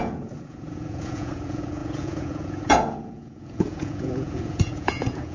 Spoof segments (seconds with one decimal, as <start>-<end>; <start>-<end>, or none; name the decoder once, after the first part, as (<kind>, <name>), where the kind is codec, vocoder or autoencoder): 0.0-5.3 (vocoder, Vocos)